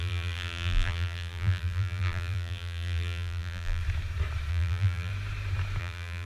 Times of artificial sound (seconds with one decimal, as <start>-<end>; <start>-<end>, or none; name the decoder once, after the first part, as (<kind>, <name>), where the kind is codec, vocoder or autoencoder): 0.0-3.8 (vocoder, BigVGAN v2); 4.5-5.1; 5.8-6.3